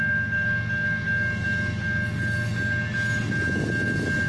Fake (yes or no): no